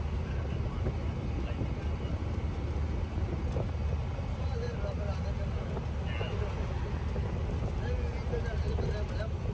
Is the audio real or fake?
real